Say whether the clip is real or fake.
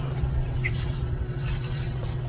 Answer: fake